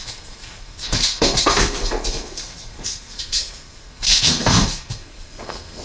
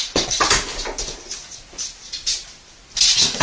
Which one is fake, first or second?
first